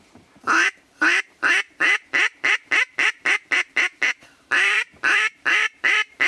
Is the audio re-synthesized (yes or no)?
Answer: yes